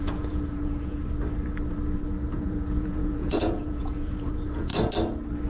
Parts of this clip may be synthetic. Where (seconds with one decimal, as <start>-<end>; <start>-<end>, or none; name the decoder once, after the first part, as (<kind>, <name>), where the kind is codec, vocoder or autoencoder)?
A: 0.0-1.0 (vocoder, Vocos); 2.4-4.7